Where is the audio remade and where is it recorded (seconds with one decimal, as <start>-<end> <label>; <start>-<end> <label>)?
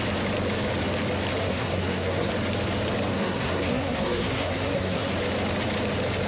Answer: 0.0-1.4 recorded; 1.4-2.3 remade; 2.3-3.1 recorded; 3.1-5.1 remade; 5.1-6.3 recorded